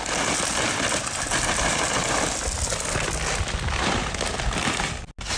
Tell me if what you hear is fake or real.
real